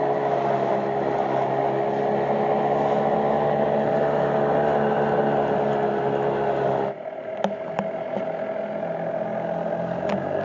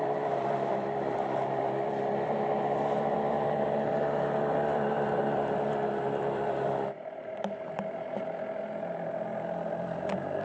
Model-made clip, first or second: second